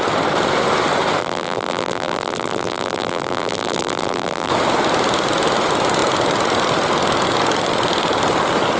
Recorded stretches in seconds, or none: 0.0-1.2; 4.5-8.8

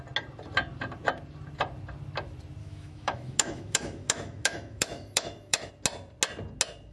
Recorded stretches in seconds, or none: 0.0-2.6; 5.7-6.9

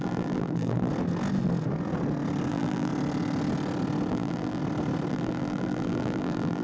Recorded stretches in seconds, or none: 0.9-2.5; 2.9-4.1; 4.6-5.1

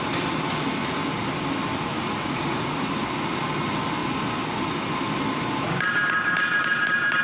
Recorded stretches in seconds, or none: 0.0-1.9; 2.8-7.2

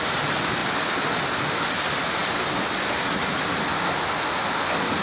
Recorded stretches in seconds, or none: 0.0-5.0

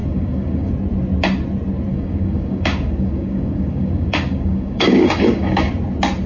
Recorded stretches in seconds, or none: 0.7-1.9; 5.7-6.3